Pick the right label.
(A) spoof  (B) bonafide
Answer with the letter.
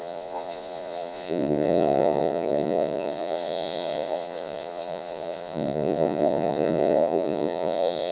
A